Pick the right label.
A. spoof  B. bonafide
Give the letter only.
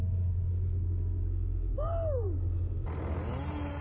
B